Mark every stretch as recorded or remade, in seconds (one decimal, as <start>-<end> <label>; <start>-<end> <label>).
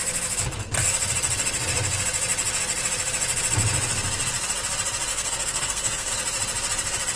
0.0-5.1 recorded; 5.1-6.1 remade; 6.1-7.2 recorded